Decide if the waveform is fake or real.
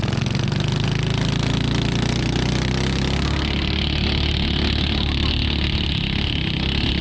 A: real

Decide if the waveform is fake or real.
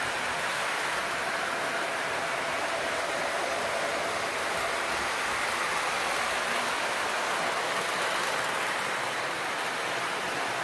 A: real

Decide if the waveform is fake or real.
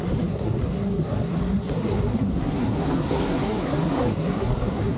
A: fake